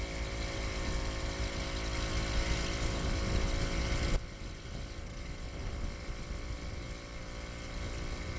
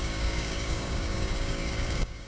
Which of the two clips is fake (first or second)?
second